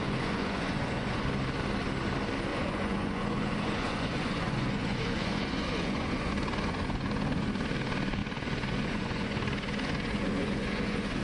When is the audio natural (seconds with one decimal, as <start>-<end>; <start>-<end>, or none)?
1.2-2.5; 7.5-8.2